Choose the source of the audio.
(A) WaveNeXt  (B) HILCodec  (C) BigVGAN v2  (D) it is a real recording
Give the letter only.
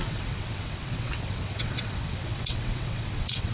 A